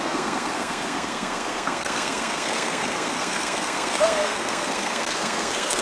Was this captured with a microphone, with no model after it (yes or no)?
no